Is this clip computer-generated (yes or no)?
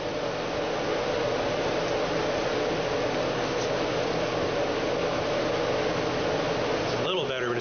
no